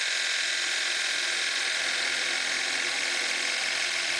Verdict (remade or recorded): recorded